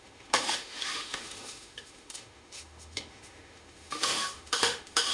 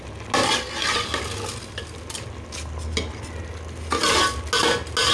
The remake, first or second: first